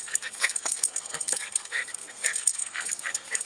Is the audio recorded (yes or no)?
no